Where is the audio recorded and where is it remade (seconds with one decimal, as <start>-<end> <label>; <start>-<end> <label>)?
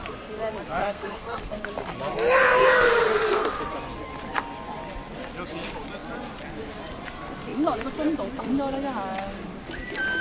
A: 0.0-0.8 recorded; 0.8-1.6 remade; 1.6-2.4 recorded; 2.4-3.5 remade; 3.5-10.2 recorded